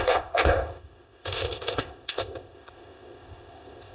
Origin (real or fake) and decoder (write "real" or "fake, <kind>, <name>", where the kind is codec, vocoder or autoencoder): fake, codec, ZipCodec